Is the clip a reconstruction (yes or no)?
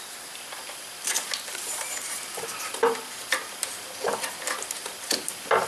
no